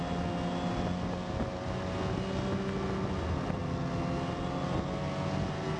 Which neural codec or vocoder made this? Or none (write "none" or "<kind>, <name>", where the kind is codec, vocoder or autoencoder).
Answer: none